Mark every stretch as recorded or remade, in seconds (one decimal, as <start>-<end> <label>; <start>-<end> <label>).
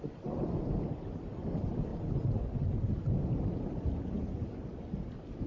0.0-5.5 recorded